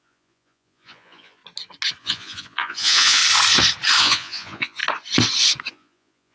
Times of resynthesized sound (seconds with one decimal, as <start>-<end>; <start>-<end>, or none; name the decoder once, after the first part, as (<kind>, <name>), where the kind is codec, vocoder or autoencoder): 0.0-1.4 (vocoder, Vocos); 2.0-3.2; 4.0-4.8; 5.7-6.3